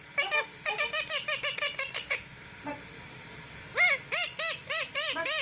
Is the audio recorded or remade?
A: recorded